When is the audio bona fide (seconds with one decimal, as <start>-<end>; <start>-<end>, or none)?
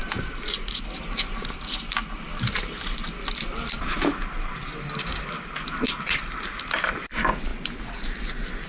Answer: 0.0-8.7